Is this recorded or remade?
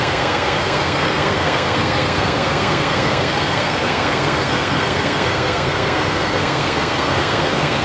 remade